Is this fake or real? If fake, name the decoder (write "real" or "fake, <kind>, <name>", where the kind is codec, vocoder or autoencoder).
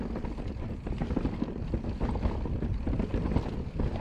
real